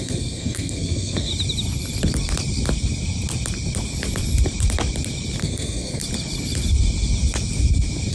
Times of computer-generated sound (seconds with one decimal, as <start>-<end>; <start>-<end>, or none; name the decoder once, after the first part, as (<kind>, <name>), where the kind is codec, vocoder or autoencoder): 0.0-1.3 (codec, SNAC); 5.4-6.0